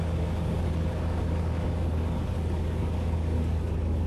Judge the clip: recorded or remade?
remade